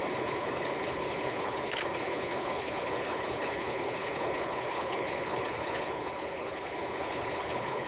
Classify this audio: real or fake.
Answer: fake